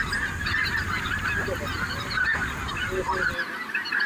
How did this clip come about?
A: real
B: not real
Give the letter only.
A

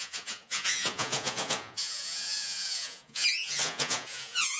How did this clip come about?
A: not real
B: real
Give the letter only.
A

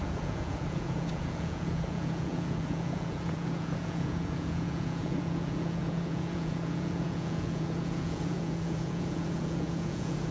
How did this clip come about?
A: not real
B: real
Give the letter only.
A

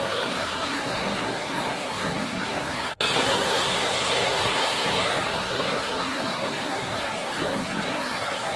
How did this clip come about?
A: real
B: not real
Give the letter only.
B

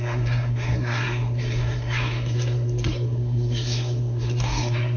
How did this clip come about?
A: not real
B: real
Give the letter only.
A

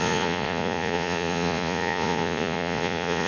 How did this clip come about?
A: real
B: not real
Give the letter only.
B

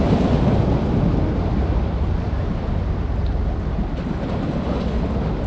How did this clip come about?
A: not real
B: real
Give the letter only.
B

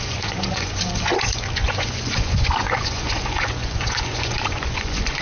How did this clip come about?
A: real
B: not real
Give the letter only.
B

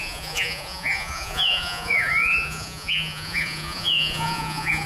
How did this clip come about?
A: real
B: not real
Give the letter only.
B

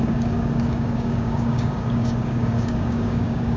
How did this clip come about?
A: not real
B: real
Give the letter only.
A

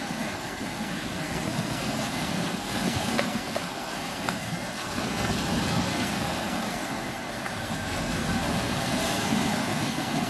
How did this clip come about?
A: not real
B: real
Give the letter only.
A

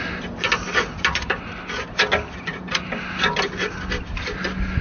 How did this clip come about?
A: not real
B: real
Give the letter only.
B